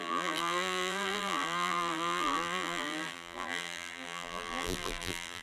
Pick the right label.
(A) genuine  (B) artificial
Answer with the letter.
B